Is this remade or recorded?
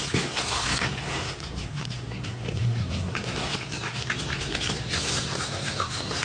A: remade